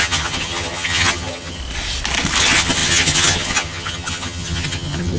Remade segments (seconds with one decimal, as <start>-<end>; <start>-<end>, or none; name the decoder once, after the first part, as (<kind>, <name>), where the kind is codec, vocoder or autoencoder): 0.0-1.6 (vocoder, HiFi-GAN); 2.4-5.2